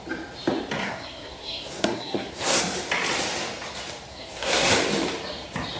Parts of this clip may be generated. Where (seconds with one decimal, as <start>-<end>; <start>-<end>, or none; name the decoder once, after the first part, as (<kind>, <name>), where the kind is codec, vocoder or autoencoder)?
0.8-2.6 (codec, SNAC); 4.1-4.7